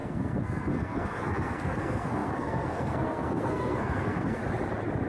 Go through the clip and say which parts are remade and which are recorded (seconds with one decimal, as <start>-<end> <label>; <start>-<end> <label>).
0.0-4.4 remade; 4.4-5.1 recorded